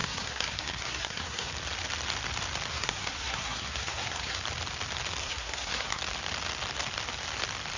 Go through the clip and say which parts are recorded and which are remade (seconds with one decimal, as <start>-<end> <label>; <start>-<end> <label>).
0.0-1.5 remade; 1.5-2.7 recorded; 2.7-4.4 remade; 4.4-5.2 recorded; 5.2-6.0 remade; 6.0-7.8 recorded